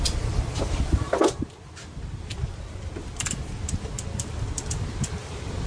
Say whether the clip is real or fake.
real